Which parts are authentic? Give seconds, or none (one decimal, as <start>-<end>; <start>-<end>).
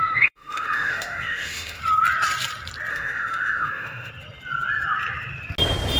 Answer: 1.8-2.9; 4.1-6.0